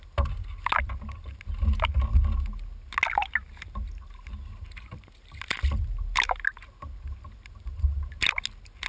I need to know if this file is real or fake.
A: real